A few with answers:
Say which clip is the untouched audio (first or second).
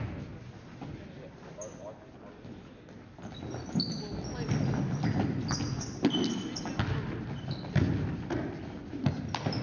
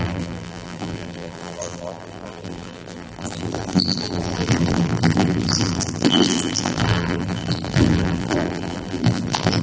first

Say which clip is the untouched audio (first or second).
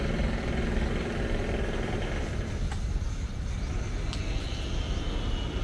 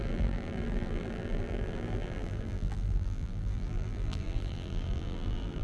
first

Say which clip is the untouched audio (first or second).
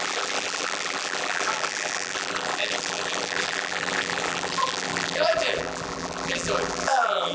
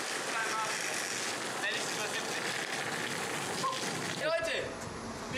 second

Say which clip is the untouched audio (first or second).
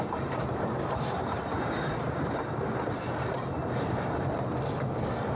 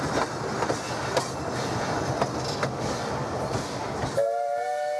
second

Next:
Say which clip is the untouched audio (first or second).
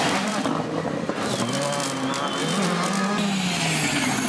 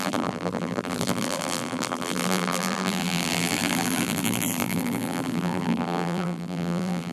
first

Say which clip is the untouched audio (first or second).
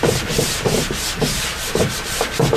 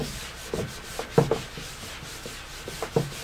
second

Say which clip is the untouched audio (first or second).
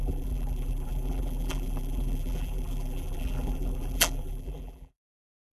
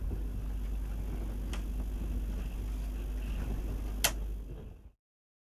second